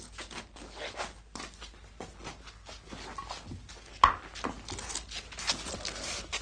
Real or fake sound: real